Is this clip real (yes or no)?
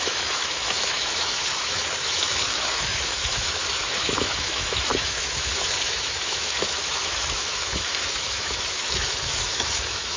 no